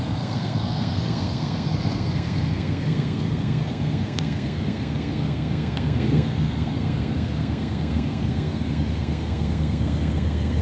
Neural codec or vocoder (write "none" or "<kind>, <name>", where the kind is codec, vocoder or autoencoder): codec, SNAC